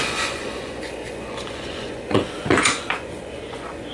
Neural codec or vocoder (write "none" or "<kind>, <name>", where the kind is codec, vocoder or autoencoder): vocoder, Vocos